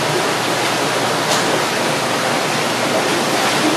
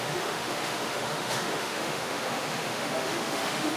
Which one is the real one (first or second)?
first